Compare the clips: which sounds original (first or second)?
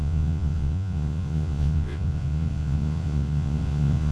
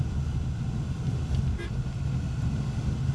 second